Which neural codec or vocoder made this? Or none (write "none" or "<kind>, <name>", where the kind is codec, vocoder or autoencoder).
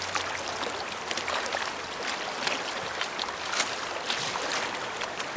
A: none